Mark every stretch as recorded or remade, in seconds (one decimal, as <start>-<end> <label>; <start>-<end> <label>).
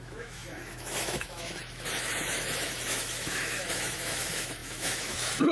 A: 0.0-5.5 remade